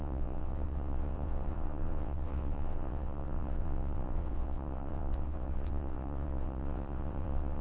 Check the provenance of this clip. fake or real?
fake